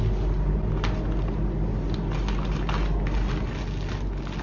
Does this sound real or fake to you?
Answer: real